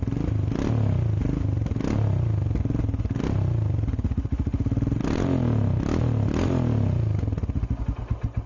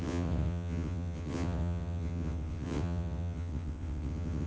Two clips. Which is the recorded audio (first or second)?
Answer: first